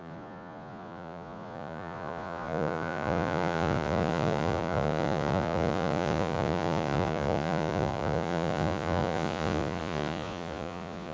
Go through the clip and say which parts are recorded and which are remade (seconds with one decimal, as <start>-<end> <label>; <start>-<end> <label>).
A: 0.0-11.1 remade